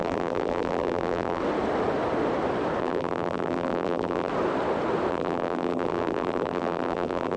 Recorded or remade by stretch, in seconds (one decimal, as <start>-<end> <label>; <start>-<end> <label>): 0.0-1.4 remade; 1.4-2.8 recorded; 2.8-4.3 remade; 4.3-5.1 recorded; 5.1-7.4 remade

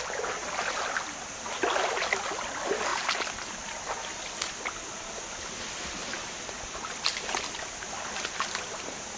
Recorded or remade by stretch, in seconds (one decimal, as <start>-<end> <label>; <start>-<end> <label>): 0.0-9.2 recorded

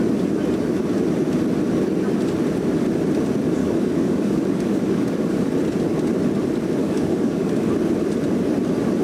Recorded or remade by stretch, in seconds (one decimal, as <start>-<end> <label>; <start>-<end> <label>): 0.0-3.6 recorded; 3.6-5.5 remade; 5.5-6.8 recorded; 6.8-7.7 remade; 7.7-9.0 recorded

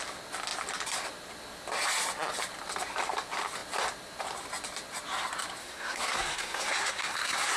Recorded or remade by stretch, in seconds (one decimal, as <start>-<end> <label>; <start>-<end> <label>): 0.0-5.6 recorded; 5.6-7.6 remade

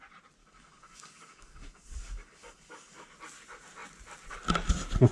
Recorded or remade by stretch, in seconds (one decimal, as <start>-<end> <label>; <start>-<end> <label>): 0.0-0.4 recorded; 0.4-3.1 remade; 3.1-5.1 recorded